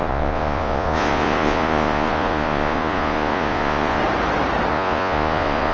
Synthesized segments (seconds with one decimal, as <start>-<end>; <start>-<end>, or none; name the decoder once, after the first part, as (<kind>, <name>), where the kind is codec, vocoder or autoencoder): 0.0-4.0 (vocoder, Vocos); 4.7-5.7